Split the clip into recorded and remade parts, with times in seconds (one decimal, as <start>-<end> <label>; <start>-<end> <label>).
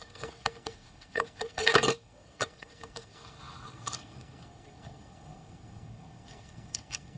0.0-7.2 remade